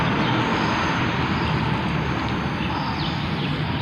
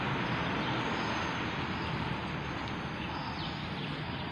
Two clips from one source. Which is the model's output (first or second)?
second